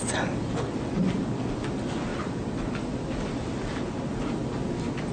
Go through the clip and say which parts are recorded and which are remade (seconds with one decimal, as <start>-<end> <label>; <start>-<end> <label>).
0.0-2.1 recorded; 2.1-3.5 remade; 3.5-5.1 recorded